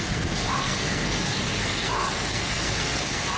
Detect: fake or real fake